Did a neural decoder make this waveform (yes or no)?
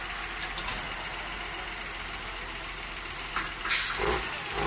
no